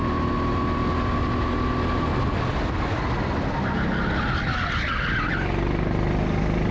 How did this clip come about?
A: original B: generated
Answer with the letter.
A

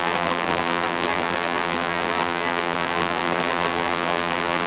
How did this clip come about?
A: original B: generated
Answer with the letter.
B